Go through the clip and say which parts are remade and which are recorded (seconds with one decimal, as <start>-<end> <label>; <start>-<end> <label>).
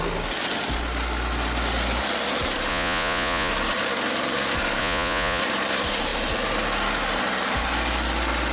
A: 0.0-2.7 recorded; 2.7-3.5 remade; 3.5-4.8 recorded; 4.8-5.4 remade; 5.4-8.5 recorded